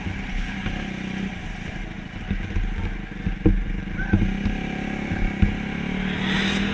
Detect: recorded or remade recorded